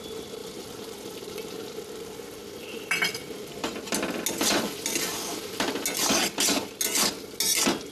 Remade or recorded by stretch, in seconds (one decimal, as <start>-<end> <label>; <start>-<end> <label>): 0.0-0.4 recorded; 0.4-3.6 remade; 3.6-7.9 recorded